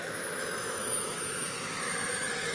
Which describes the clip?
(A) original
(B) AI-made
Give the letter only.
B